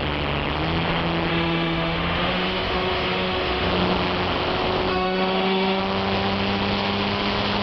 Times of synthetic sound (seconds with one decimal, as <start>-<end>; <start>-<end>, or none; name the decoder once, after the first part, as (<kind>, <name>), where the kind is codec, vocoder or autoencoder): 1.3-3.7 (autoencoder, DAC-VAE); 4.9-5.8